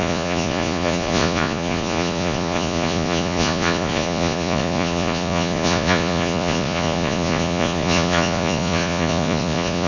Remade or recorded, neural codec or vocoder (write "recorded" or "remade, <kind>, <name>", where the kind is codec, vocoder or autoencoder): remade, vocoder, Vocos